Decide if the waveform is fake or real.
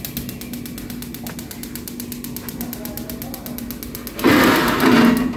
real